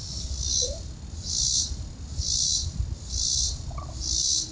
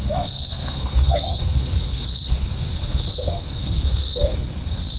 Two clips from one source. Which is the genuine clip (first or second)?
first